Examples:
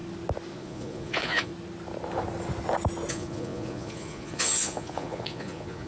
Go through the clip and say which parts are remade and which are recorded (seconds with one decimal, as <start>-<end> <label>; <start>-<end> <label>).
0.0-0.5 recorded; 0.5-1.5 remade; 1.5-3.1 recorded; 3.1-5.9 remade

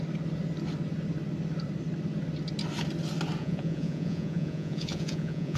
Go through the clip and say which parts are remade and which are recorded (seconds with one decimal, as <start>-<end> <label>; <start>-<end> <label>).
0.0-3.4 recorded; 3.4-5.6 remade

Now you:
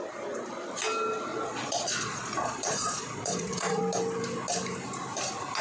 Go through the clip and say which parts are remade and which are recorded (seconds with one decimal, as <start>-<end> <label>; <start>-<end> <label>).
0.0-1.3 recorded; 1.3-3.8 remade; 3.8-5.6 recorded

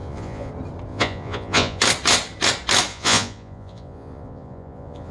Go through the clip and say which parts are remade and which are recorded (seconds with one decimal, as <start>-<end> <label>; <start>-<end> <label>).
0.0-0.5 remade; 0.5-0.9 recorded; 0.9-1.8 remade; 1.8-2.9 recorded; 2.9-5.1 remade